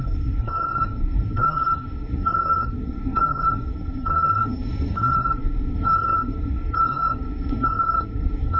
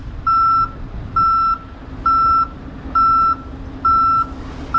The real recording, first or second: second